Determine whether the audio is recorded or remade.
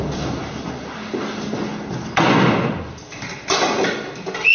recorded